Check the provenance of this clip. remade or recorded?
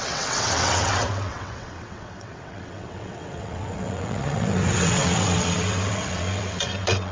remade